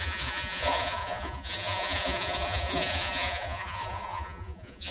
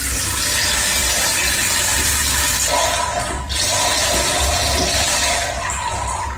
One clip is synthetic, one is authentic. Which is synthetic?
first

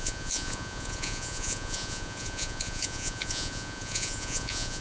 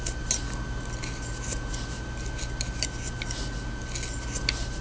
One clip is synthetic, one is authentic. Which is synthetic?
first